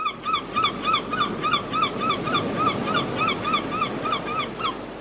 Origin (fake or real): real